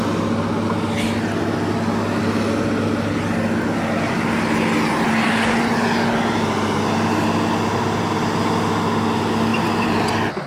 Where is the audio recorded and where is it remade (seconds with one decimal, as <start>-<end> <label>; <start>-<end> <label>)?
0.0-9.5 recorded; 9.5-10.1 remade; 10.1-10.5 recorded